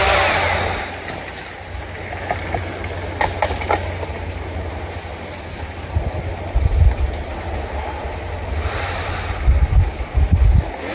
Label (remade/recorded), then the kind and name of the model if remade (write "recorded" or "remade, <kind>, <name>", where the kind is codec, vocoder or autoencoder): recorded